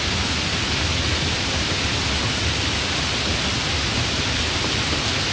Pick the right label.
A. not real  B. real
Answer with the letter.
B